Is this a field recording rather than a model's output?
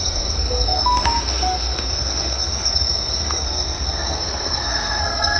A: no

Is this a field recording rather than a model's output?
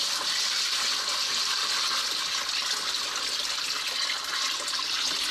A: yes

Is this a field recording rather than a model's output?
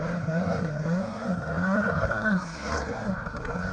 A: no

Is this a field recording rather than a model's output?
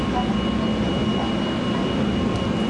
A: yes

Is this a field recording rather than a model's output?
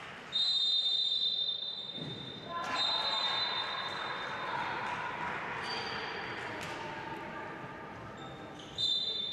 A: yes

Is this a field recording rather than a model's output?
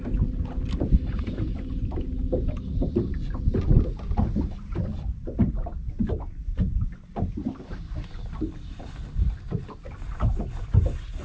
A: yes